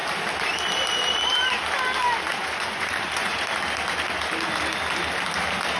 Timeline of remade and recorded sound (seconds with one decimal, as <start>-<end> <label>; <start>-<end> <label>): 0.0-2.3 recorded; 2.3-3.4 remade; 3.4-5.8 recorded